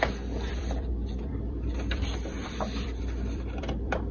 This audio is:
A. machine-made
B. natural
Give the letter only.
A